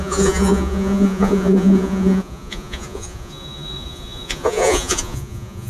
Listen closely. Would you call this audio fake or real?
fake